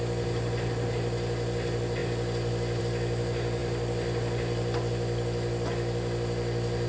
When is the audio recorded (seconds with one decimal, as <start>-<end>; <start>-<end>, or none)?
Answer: 0.0-6.9